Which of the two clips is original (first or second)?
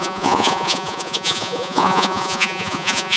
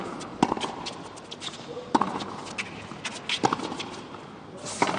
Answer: second